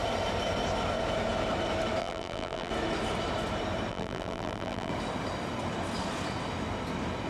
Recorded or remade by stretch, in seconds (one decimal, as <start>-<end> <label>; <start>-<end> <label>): 0.0-2.0 recorded; 2.0-2.7 remade; 2.7-3.9 recorded; 3.9-4.9 remade; 4.9-7.3 recorded

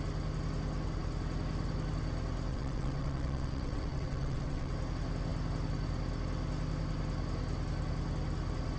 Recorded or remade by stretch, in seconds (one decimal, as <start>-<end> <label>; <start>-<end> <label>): 0.0-2.5 recorded; 2.5-4.7 remade; 4.7-8.8 recorded